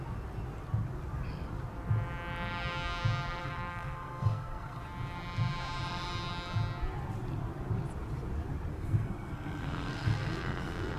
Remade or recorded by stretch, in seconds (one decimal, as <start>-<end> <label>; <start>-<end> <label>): 0.0-3.4 recorded; 3.4-4.8 remade; 4.8-8.7 recorded; 8.7-11.0 remade

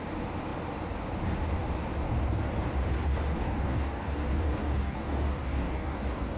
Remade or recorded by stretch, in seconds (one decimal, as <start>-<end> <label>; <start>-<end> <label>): 0.0-3.4 recorded; 3.4-6.4 remade

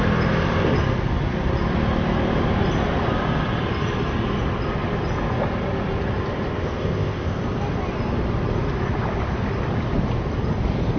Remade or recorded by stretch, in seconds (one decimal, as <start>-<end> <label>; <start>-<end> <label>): 0.0-6.6 recorded; 6.6-7.4 remade; 7.4-11.0 recorded

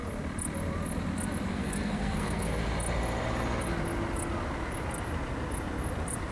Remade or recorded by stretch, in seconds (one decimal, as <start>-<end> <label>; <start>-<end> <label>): 0.0-1.5 recorded; 1.5-2.6 remade; 2.6-6.3 recorded

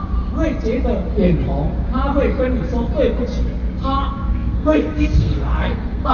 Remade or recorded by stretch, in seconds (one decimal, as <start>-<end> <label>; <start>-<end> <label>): 0.0-4.3 recorded; 4.3-6.1 remade

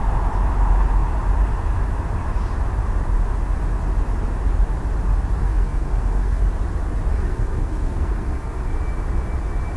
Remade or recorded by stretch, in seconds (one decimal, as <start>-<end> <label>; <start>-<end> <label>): 0.0-5.4 recorded; 5.4-6.4 remade; 6.4-7.1 recorded; 7.1-8.7 remade; 8.7-9.8 recorded

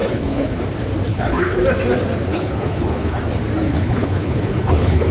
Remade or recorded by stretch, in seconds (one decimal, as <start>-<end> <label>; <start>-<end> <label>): 0.0-0.6 remade; 0.6-1.1 recorded; 1.1-1.6 remade; 1.6-2.3 recorded; 2.3-3.2 remade; 3.2-3.7 recorded; 3.7-5.1 remade

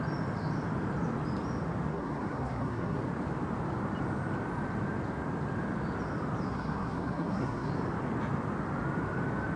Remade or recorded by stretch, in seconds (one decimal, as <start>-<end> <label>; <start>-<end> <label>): 0.0-1.9 recorded; 1.9-3.0 remade; 3.0-6.5 recorded; 6.5-7.7 remade; 7.7-9.6 recorded